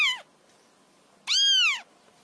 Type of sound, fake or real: real